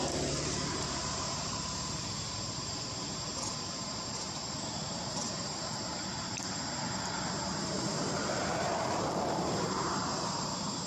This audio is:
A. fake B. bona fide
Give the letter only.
A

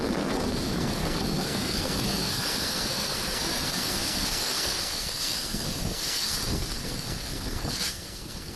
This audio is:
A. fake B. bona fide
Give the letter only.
A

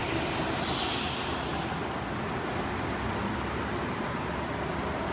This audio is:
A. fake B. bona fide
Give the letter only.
B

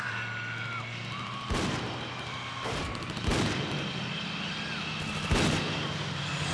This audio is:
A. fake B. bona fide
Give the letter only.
B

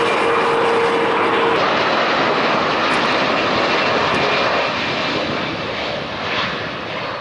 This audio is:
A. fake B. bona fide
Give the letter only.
B